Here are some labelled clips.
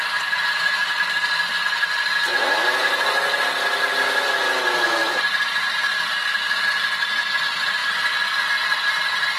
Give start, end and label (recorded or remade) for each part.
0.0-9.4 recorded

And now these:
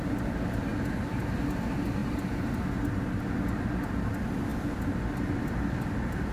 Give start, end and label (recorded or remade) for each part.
0.0-6.3 recorded

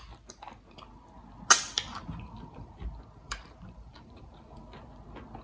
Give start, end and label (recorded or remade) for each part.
0.0-1.9 recorded; 1.9-2.7 remade; 2.7-3.2 recorded; 3.2-4.3 remade; 4.3-5.4 recorded

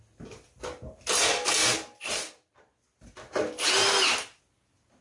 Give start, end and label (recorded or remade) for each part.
0.0-1.6 recorded; 1.6-2.6 remade; 2.6-5.0 recorded